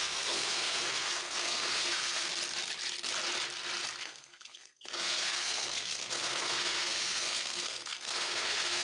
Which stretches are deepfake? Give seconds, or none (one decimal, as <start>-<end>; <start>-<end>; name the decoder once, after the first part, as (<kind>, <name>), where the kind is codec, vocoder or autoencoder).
0.0-2.3 (codec, SNAC); 4.0-8.8